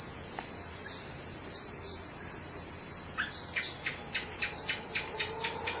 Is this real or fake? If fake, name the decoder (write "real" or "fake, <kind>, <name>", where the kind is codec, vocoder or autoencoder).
real